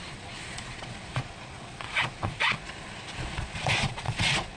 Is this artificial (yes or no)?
yes